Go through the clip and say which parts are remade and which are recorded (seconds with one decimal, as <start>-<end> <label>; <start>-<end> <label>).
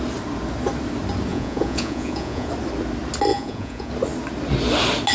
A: 0.0-1.3 recorded; 1.3-2.5 remade; 2.5-3.3 recorded; 3.3-3.9 remade; 3.9-5.1 recorded